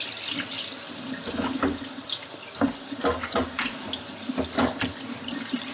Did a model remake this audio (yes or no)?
no